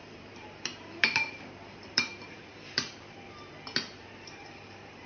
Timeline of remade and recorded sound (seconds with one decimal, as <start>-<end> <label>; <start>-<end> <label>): 0.0-5.1 remade

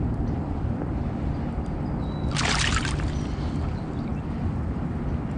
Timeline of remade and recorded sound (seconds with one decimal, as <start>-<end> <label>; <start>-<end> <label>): 0.0-5.4 recorded

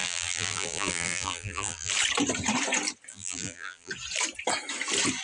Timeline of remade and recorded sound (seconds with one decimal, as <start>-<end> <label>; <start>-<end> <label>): 0.0-1.9 remade; 1.9-3.1 recorded; 3.1-3.9 remade; 3.9-5.2 recorded

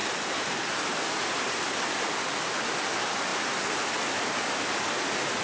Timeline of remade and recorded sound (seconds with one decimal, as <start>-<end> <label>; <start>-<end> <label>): 0.0-2.0 remade; 2.0-5.4 recorded

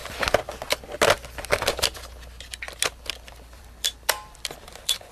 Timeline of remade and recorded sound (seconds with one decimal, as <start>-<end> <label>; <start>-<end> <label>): 0.0-3.1 recorded; 3.1-5.1 remade

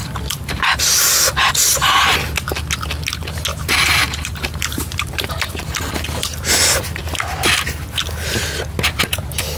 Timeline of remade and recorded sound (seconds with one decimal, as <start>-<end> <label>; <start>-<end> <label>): 0.0-1.1 remade; 1.1-3.5 recorded; 3.5-5.5 remade; 5.5-9.6 recorded

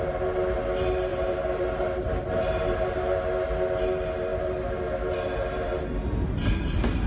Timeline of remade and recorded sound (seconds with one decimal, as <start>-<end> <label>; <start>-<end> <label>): 0.0-1.1 recorded; 1.1-2.9 remade; 2.9-7.1 recorded